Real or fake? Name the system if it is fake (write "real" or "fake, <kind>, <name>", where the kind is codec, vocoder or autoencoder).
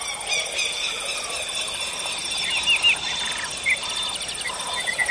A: real